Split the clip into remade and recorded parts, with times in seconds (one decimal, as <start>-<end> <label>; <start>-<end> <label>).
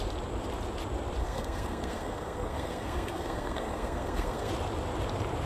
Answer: 0.0-1.2 recorded; 1.2-4.5 remade; 4.5-5.5 recorded